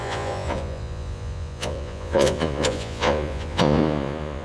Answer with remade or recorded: remade